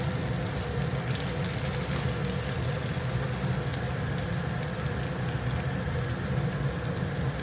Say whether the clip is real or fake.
real